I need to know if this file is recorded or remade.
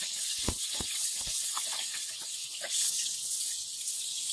remade